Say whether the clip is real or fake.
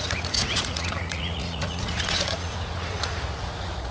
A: fake